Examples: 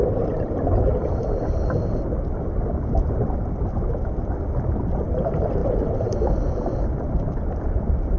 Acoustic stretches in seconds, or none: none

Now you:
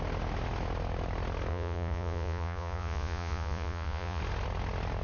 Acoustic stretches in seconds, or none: 0.0-1.5; 4.2-5.0

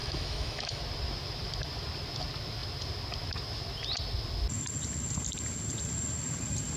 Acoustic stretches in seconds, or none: 0.8-6.8

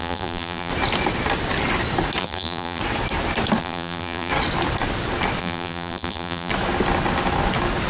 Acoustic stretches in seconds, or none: 0.7-2.2; 2.8-3.6; 4.3-5.4; 6.5-7.9

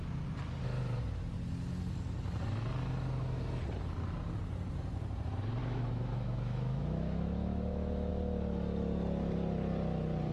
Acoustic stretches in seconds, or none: 0.0-5.6; 8.1-10.3

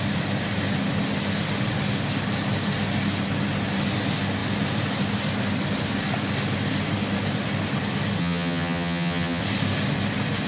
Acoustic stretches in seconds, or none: 0.0-8.2; 9.4-10.5